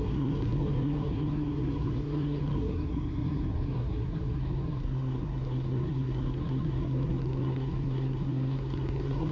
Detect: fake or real fake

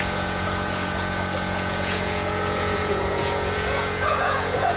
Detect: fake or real fake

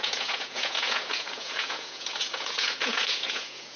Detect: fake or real fake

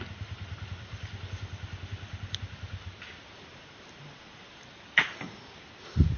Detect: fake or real real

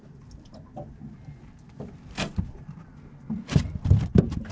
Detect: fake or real real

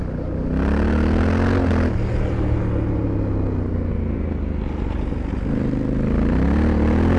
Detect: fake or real real